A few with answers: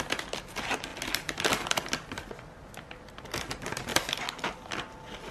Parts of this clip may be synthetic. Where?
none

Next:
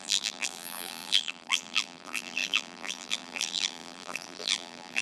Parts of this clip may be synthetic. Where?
0.0-5.0 (vocoder, BigVGAN v2)

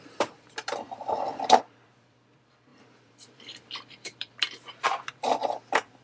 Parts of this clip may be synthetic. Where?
0.0-6.0 (vocoder, BigVGAN v2)

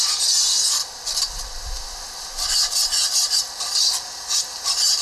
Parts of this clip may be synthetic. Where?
none

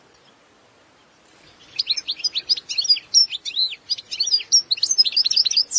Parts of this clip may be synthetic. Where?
4.9-5.8 (vocoder, BigVGAN v2)

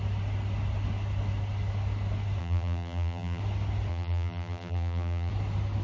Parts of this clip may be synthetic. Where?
2.4-3.4 (vocoder, BigVGAN v2); 3.9-5.3

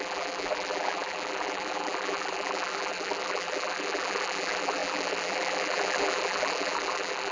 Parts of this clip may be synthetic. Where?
0.0-7.3 (vocoder, BigVGAN v2)

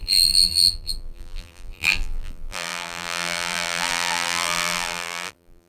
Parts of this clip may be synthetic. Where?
0.0-5.7 (vocoder, BigVGAN v2)